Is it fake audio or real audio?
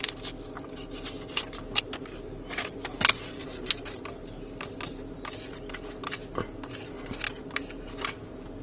real